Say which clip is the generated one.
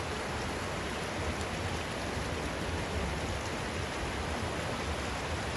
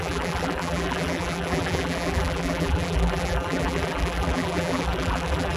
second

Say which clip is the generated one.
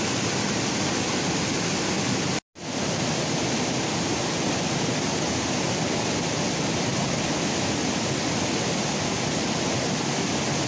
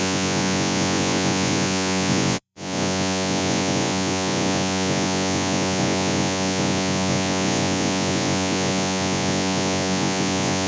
second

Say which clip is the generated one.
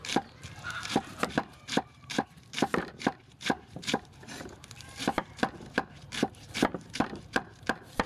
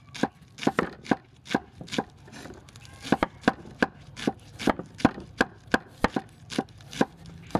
first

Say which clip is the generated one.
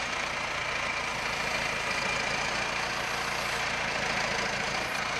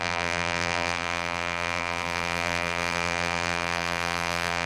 second